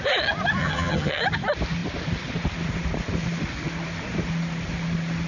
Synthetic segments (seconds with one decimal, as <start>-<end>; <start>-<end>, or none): 0.6-1.2